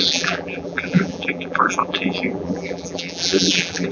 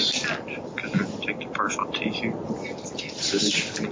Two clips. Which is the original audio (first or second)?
second